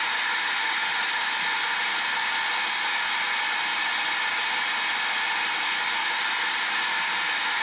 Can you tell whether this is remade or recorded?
recorded